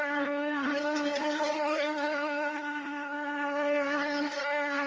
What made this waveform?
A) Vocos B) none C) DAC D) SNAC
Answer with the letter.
D